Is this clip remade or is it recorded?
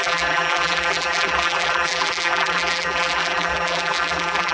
remade